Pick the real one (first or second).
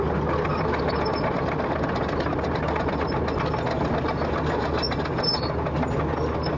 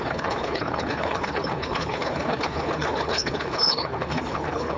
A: first